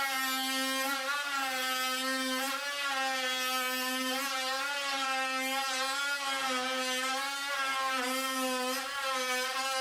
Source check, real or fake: real